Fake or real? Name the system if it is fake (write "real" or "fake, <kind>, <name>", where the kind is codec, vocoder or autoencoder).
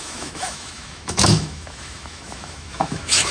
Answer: fake, autoencoder, DAC-VAE